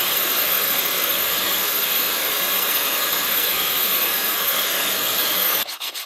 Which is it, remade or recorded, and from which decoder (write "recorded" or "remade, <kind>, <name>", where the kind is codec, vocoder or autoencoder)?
remade, codec, SNAC